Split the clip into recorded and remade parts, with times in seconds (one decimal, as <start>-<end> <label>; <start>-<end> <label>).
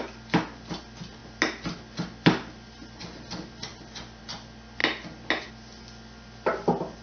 0.0-7.0 recorded